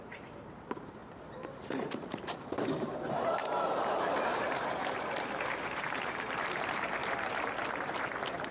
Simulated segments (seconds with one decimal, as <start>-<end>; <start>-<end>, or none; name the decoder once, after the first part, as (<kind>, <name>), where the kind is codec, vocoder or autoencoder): 0.0-1.0 (vocoder, BigVGAN v2); 1.6-8.5